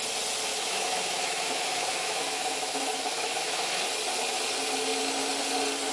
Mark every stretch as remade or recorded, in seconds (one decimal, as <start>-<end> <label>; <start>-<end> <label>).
0.0-0.5 recorded; 0.5-3.8 remade; 3.8-5.9 recorded